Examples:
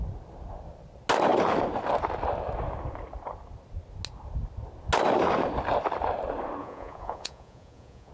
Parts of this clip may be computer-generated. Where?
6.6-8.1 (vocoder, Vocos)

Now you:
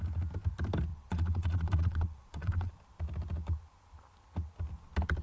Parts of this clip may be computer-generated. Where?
0.9-2.7 (vocoder, Vocos)

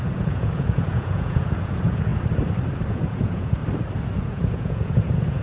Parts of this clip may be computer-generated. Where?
0.0-2.1 (vocoder, Vocos); 2.9-3.6; 4.2-5.4

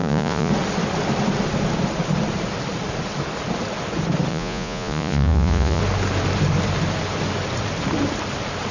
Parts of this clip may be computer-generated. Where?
0.0-0.5 (vocoder, Vocos); 4.3-5.8